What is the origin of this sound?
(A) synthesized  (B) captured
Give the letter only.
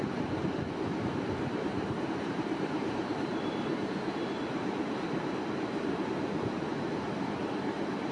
A